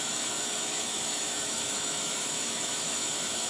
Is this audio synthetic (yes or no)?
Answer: yes